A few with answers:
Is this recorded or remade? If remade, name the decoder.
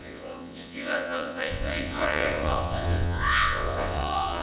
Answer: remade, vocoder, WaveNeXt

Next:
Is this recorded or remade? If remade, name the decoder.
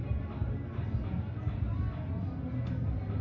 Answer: recorded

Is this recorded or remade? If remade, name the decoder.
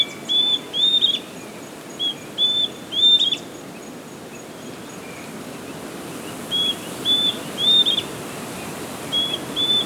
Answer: recorded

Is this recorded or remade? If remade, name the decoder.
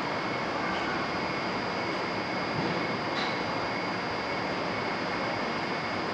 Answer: recorded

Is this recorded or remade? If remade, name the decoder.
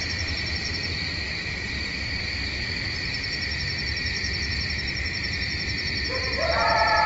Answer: recorded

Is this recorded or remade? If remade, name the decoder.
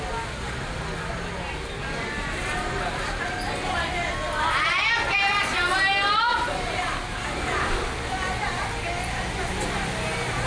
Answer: recorded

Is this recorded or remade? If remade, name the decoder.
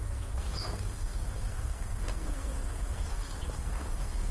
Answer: remade, codec, SNAC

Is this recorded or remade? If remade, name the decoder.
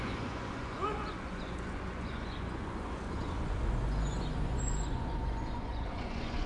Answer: remade, vocoder, Vocos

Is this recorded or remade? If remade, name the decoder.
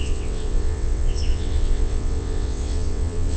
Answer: remade, vocoder, WaveNeXt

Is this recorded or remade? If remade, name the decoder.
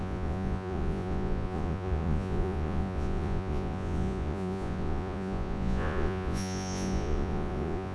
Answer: remade, vocoder, Vocos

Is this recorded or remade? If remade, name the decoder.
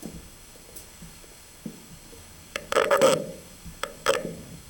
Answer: remade, codec, DAC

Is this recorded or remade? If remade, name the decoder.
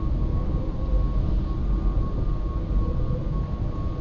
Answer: recorded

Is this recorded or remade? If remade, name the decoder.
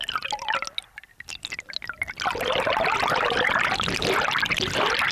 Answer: recorded